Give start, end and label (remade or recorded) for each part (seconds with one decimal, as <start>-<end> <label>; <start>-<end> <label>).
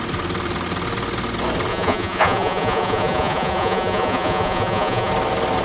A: 0.0-1.7 recorded; 1.7-5.1 remade; 5.1-5.6 recorded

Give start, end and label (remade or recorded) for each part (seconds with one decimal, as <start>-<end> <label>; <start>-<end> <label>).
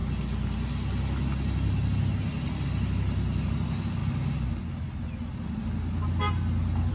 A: 0.0-6.9 recorded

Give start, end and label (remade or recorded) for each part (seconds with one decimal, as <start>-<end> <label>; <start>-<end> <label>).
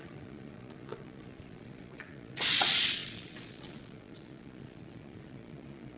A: 0.0-6.0 remade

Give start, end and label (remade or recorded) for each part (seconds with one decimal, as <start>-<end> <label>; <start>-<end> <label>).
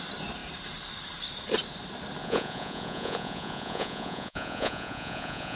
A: 0.0-2.2 recorded; 2.2-5.6 remade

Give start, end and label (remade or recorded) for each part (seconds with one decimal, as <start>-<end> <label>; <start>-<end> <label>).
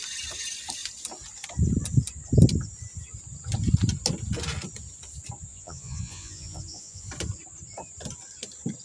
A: 0.0-5.5 recorded; 5.5-7.1 remade; 7.1-8.8 recorded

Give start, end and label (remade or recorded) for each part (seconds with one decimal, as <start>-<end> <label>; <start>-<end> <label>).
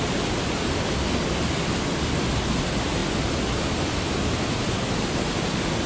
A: 0.0-5.9 recorded